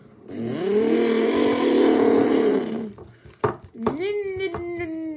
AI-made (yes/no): no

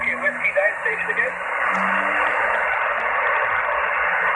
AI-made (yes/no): no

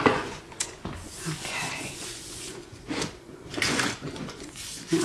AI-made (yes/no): yes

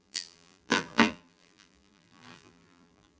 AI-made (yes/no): yes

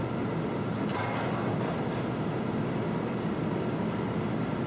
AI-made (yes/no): no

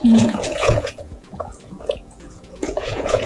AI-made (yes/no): yes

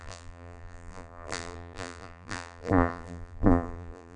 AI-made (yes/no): yes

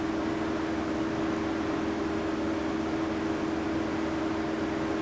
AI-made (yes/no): no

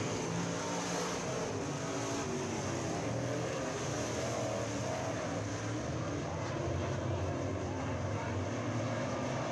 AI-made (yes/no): no